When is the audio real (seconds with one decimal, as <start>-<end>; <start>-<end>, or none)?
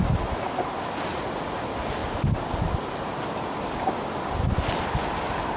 0.0-1.1; 1.6-5.6